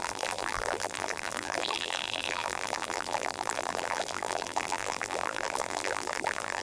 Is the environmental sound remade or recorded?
remade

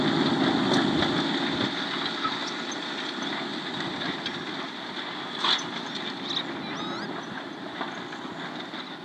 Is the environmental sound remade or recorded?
recorded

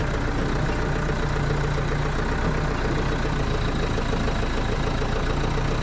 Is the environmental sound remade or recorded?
recorded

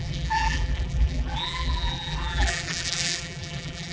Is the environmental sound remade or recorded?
remade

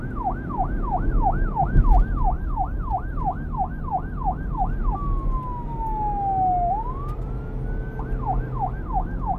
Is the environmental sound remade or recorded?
recorded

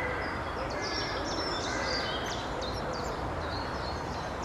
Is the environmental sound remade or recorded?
remade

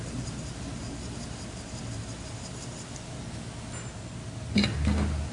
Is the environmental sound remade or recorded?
recorded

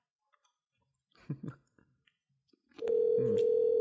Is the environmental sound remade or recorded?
remade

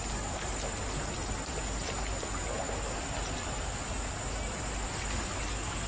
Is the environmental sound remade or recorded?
recorded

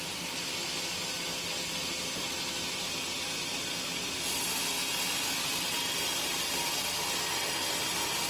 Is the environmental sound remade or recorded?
recorded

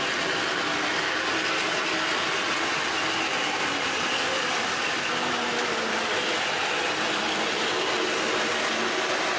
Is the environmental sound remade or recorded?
recorded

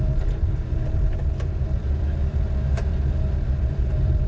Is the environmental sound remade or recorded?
remade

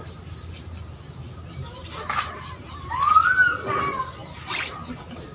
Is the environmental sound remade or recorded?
recorded